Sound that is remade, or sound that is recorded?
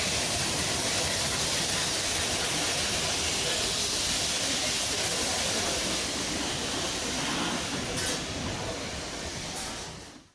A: recorded